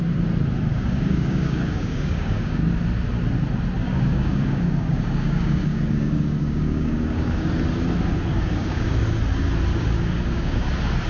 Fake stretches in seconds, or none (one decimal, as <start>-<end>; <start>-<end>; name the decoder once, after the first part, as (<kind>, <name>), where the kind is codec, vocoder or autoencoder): 0.7-2.7 (codec, DAC); 3.8-7.5; 8.3-9.0; 9.7-10.7